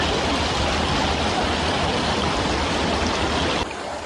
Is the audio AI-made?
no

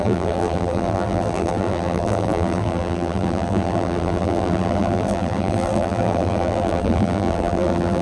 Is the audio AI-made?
yes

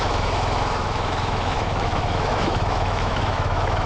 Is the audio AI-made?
yes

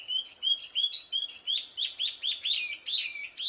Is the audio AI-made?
no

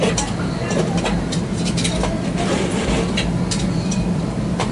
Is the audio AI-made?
yes